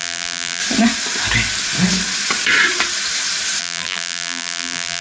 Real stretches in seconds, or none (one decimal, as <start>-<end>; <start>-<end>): 0.6-3.6